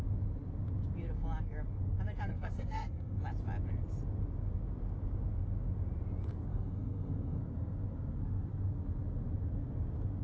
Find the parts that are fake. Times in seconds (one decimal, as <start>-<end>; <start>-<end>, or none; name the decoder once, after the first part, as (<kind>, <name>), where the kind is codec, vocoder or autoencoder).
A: 2.3-3.2 (codec, SNAC); 6.5-7.4